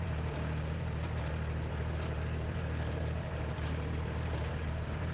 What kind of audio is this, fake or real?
fake